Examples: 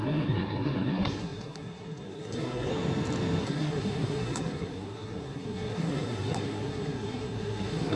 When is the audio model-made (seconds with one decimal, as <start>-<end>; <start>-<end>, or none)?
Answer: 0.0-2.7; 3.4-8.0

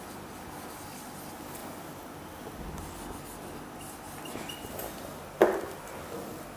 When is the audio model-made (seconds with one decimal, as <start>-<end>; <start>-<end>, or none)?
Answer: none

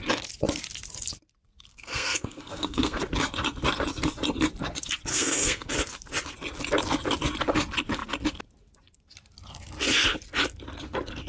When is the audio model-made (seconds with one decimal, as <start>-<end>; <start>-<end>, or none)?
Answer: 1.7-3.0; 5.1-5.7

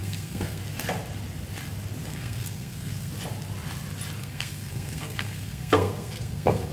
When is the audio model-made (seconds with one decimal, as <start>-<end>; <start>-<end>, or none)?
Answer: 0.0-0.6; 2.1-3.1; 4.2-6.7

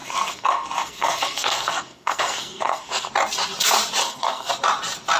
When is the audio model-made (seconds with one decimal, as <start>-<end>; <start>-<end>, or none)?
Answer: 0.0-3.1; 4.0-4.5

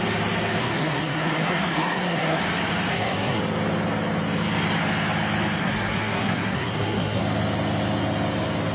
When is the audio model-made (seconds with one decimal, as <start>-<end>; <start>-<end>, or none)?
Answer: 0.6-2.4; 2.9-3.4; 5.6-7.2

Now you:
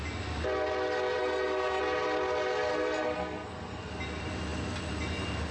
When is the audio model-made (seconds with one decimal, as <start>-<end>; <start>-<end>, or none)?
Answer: 1.2-1.8; 2.7-3.9

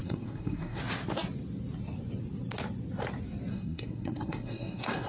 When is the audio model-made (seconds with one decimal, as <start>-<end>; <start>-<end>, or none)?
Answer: 0.0-0.8; 3.5-5.1